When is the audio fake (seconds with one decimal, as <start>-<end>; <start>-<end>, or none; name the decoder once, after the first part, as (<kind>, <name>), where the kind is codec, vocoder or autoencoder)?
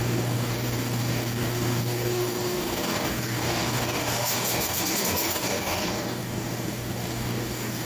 0.0-7.8 (codec, DAC)